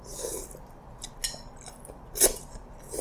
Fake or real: real